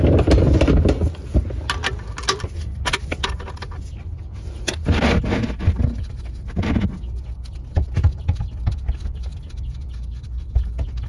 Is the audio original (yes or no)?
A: yes